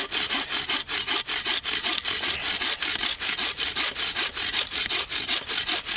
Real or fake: real